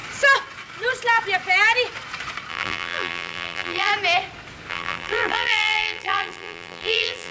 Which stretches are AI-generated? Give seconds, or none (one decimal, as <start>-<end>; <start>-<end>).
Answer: 2.5-3.9; 4.7-7.3